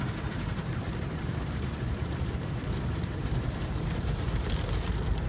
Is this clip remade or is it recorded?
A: remade